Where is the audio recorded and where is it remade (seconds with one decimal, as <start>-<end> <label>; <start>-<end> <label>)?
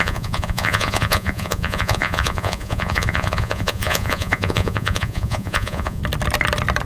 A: 0.0-6.0 remade; 6.0-6.9 recorded